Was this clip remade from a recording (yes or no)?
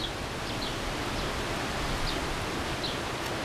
no